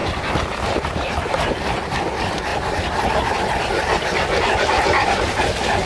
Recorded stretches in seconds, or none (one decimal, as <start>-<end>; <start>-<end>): 0.0-5.9